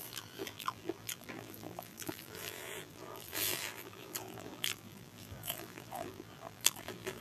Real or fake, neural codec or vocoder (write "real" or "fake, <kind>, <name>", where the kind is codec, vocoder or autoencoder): fake, vocoder, BigVGAN v2